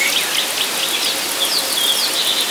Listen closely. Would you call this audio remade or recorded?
recorded